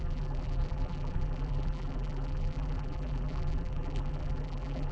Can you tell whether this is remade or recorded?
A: remade